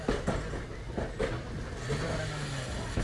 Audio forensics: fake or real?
real